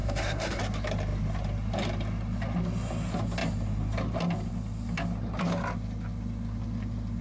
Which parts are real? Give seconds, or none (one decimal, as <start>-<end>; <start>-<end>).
0.6-7.2